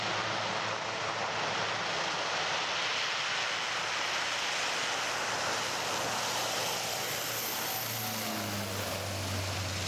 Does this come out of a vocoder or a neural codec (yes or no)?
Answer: no